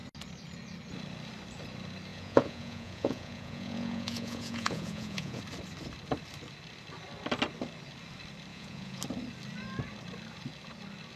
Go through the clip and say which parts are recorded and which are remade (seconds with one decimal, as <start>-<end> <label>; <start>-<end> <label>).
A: 0.0-2.1 recorded; 2.1-5.4 remade; 5.4-8.5 recorded; 8.5-9.0 remade; 9.0-11.2 recorded